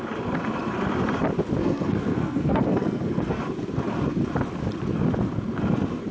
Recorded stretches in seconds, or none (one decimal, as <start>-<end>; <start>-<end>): 0.0-1.6; 3.4-6.1